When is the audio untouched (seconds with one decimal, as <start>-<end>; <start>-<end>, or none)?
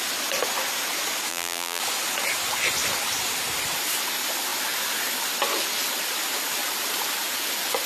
0.0-1.3; 1.8-7.9